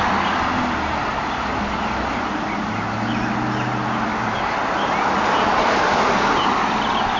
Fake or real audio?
real